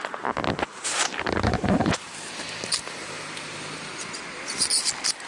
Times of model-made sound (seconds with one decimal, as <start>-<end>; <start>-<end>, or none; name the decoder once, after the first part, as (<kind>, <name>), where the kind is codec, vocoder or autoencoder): 0.7-3.9 (vocoder, BigVGAN v2)